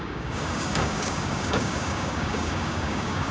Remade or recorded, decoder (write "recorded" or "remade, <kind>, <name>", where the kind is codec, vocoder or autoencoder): remade, codec, DAC